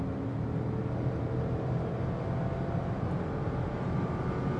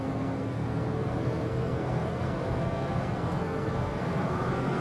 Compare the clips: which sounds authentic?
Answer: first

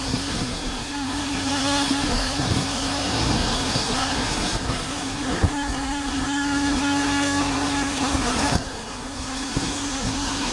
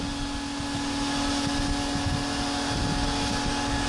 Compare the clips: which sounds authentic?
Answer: second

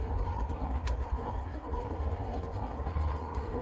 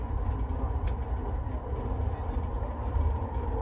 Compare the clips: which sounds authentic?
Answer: second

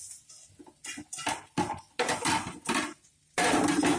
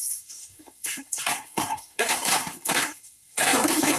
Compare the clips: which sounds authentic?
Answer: first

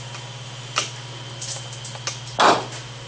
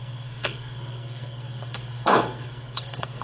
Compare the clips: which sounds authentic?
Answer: first